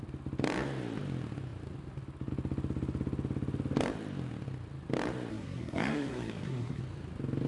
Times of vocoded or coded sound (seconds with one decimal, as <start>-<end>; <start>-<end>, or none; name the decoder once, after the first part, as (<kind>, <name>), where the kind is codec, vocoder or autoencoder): 5.3-6.8 (codec, SNAC)

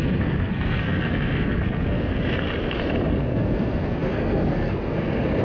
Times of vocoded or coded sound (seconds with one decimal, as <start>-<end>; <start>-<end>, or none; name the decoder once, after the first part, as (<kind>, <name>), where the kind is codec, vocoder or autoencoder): 0.0-2.1 (codec, SNAC); 3.1-5.4

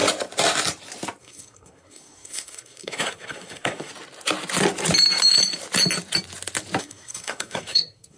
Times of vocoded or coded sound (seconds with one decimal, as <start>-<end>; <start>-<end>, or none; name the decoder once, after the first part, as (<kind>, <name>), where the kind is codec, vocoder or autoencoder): 1.2-3.9 (codec, SNAC); 6.8-8.2

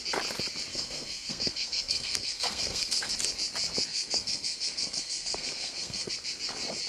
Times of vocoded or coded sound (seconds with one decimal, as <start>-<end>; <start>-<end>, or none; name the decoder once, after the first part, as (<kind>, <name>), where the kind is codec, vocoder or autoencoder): 0.7-3.1 (codec, SNAC); 3.9-6.1